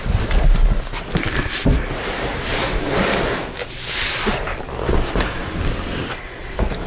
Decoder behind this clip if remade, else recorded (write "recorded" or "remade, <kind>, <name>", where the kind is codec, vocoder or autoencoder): recorded